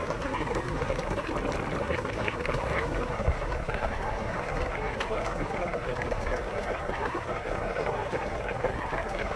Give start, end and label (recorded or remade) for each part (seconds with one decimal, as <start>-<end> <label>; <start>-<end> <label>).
0.0-1.3 remade; 1.3-1.8 recorded; 1.8-9.4 remade

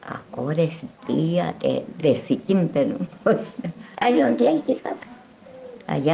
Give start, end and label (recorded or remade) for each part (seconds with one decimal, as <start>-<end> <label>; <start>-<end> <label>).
0.0-3.7 recorded; 3.7-5.0 remade; 5.0-6.1 recorded

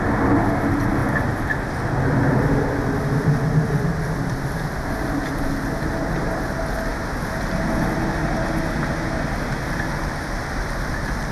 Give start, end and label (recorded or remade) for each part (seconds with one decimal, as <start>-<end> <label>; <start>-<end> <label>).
0.0-11.3 recorded

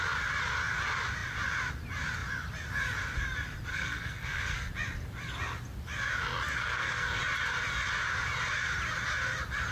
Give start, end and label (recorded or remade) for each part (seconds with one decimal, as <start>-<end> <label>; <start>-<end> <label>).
0.0-3.7 recorded; 3.7-4.7 remade; 4.7-6.6 recorded; 6.6-7.2 remade; 7.2-9.7 recorded

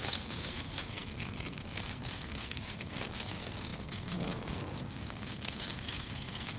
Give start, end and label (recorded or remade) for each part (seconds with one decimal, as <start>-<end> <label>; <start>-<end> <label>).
0.0-6.6 remade

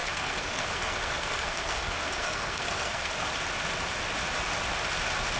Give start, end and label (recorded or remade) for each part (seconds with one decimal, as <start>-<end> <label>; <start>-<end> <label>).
0.0-3.2 remade; 3.2-5.4 recorded

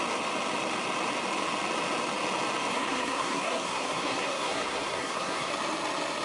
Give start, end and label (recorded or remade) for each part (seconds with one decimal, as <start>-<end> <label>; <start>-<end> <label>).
0.0-2.7 recorded; 2.7-5.5 remade; 5.5-6.2 recorded